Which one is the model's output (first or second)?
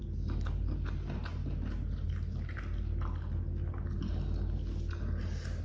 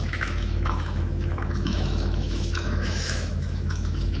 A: second